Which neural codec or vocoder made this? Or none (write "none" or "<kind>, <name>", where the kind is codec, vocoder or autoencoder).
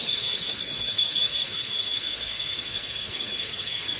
codec, SNAC